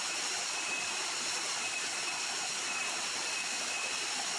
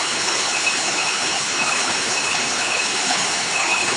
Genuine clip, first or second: first